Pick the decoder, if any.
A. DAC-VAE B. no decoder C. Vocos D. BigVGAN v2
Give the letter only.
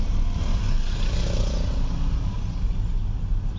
B